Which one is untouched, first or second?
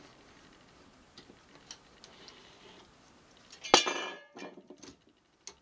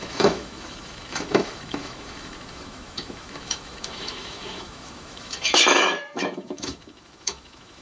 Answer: first